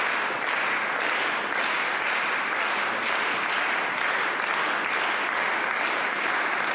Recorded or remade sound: recorded